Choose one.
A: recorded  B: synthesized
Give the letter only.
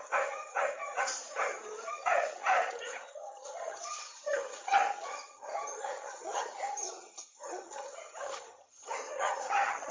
B